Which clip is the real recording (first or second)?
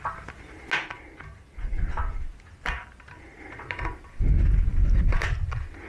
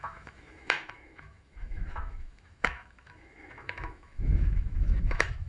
first